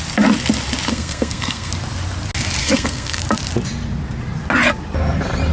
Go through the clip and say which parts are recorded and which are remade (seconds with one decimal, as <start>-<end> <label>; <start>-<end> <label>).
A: 0.0-0.9 recorded; 0.9-1.7 remade; 1.7-2.6 recorded; 2.6-3.2 remade; 3.2-5.5 recorded

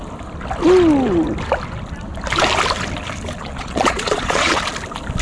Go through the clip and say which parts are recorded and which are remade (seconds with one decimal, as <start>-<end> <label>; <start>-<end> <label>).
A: 0.0-3.4 recorded; 3.4-4.6 remade; 4.6-5.2 recorded

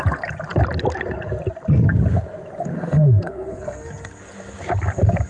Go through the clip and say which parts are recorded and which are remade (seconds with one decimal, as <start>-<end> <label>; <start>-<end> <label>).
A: 0.0-2.7 recorded; 2.7-3.9 remade; 3.9-5.3 recorded

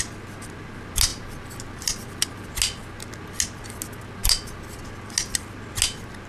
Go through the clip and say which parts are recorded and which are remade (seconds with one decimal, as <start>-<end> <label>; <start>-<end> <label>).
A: 0.0-1.1 recorded; 1.1-2.5 remade; 2.5-6.3 recorded

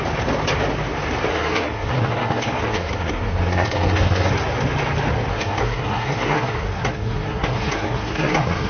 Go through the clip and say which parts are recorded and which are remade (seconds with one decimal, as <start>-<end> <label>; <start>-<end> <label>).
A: 0.0-1.3 recorded; 1.3-4.3 remade; 4.3-5.3 recorded; 5.3-8.7 remade